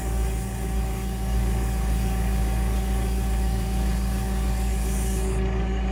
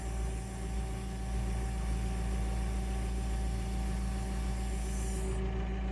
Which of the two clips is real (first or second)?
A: second